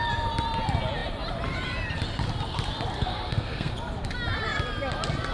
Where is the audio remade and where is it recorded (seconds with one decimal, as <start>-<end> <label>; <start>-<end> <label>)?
0.0-2.9 recorded; 2.9-3.7 remade; 3.7-5.3 recorded